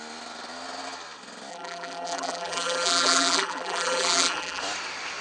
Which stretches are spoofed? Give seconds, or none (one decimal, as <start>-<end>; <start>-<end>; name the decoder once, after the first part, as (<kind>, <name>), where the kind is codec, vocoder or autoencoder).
1.5-4.6 (vocoder, BigVGAN v2)